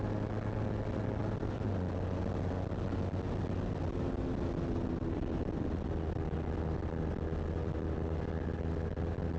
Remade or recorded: recorded